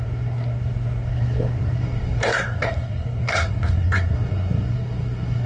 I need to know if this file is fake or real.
fake